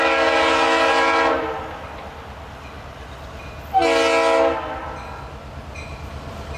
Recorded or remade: recorded